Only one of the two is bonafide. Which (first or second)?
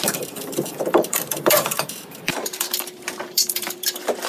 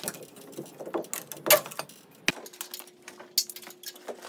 second